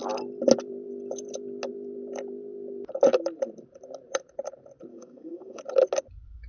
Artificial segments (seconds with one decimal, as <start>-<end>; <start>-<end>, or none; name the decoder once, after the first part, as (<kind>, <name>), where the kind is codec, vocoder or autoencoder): 4.9-5.6 (codec, SNAC)

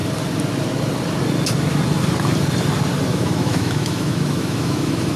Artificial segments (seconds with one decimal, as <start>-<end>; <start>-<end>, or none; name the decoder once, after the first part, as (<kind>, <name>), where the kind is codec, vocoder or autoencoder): 3.1-5.2 (autoencoder, DAC-VAE)

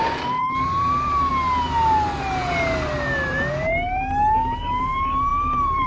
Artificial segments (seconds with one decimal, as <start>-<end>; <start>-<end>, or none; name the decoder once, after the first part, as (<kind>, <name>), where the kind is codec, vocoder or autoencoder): 0.0-1.3 (vocoder, BigVGAN v2); 4.8-5.9

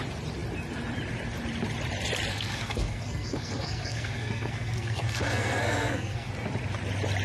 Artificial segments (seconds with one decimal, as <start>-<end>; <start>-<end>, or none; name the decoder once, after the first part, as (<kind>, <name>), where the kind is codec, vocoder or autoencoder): 2.3-6.3 (codec, SNAC)

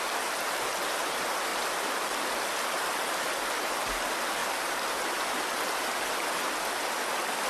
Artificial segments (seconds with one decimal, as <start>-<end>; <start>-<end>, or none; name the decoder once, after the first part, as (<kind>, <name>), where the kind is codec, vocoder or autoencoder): 4.4-5.4 (vocoder, BigVGAN v2)